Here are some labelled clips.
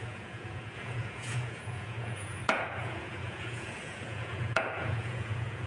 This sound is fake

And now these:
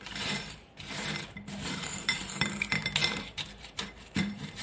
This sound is fake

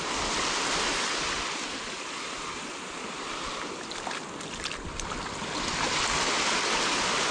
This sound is real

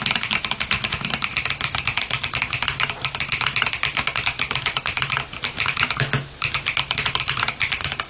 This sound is real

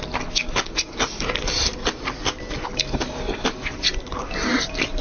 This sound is real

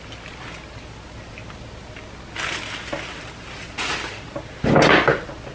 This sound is real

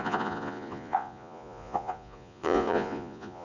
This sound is fake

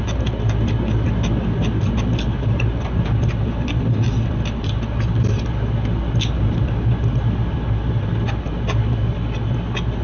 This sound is real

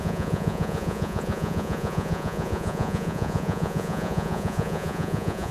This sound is fake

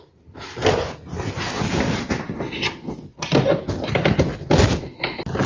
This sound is real